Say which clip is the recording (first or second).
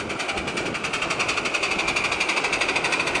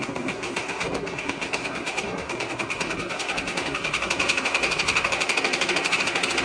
first